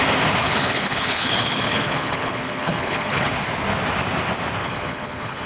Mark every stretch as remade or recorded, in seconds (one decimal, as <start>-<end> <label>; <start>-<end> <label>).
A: 0.0-0.4 recorded; 0.4-3.3 remade; 3.3-4.6 recorded; 4.6-5.5 remade